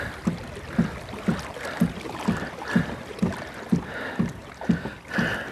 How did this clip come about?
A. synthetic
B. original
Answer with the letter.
B